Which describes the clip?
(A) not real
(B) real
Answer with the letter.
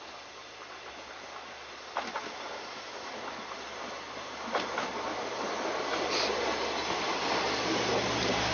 B